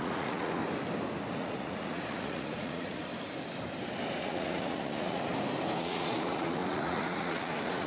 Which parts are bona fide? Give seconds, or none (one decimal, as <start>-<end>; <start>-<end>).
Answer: 0.6-1.3; 3.1-4.2; 5.3-5.8